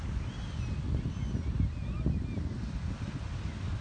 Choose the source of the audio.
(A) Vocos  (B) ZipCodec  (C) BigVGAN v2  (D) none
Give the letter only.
D